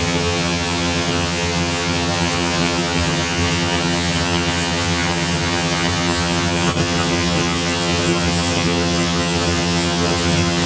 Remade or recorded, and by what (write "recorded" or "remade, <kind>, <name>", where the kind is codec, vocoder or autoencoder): remade, vocoder, HiFi-GAN